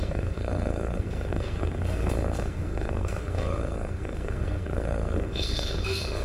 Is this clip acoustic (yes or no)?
no